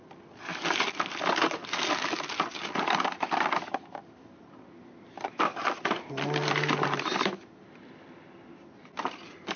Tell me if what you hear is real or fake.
real